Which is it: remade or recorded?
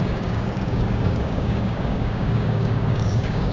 remade